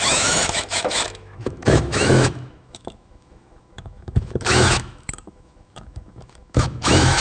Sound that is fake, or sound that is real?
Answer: fake